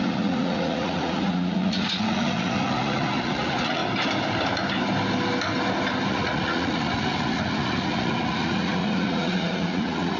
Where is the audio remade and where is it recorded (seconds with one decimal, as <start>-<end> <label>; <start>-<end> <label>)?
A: 0.0-3.8 remade; 3.8-6.1 recorded; 6.1-10.2 remade